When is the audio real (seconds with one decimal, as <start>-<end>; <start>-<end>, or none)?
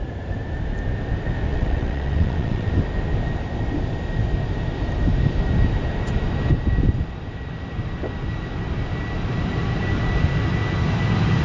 0.0-1.5; 2.7-11.4